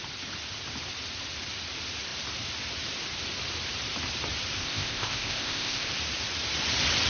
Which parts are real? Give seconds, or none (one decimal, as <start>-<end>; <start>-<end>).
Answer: 0.0-4.6; 5.9-7.1